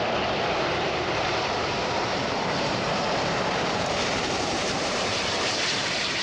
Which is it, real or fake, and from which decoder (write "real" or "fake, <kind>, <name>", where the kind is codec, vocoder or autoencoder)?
fake, vocoder, BigVGAN v2